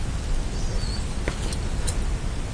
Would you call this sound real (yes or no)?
yes